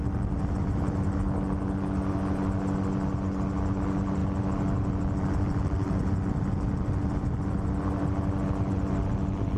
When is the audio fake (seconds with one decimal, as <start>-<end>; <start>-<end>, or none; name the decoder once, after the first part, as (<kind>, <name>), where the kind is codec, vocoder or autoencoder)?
none